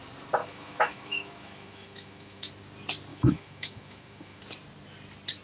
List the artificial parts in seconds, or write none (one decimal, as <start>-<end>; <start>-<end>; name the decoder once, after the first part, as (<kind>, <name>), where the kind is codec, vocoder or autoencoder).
0.4-2.5 (autoencoder, DAC-VAE); 3.1-4.4